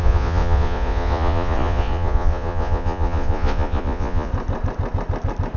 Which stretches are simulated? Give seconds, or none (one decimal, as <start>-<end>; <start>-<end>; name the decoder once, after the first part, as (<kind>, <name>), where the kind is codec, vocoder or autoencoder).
0.0-4.3 (vocoder, Vocos)